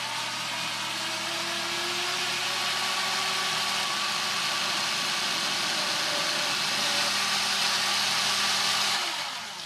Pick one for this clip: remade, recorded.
recorded